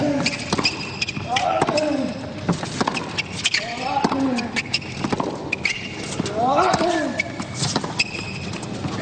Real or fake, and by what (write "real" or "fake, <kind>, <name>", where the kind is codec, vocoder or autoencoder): real